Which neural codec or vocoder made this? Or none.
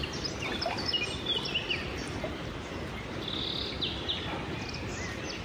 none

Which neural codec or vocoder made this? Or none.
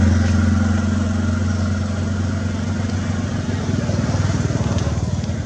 none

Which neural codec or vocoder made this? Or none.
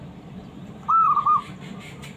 vocoder, BigVGAN v2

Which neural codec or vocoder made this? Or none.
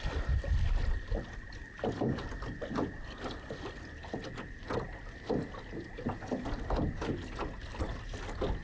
none